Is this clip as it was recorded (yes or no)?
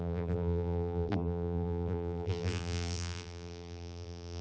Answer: no